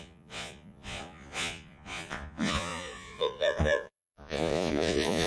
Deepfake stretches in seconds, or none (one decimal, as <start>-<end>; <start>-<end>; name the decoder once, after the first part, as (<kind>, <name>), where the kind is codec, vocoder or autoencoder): 0.0-5.3 (vocoder, Vocos)